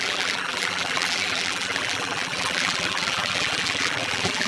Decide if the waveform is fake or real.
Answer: fake